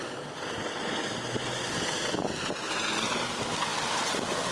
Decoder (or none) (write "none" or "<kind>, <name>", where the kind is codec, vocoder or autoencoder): none